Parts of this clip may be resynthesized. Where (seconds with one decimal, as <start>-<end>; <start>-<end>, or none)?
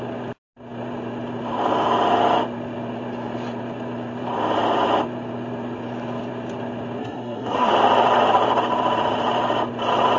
7.0-7.7